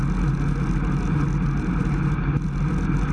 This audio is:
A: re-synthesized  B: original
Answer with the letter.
B